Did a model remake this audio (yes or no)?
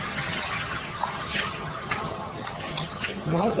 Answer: yes